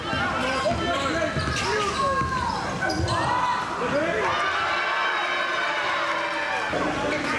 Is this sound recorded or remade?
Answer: recorded